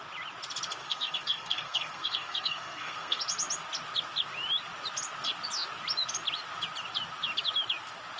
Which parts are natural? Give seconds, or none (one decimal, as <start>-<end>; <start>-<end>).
0.0-0.8; 3.2-8.2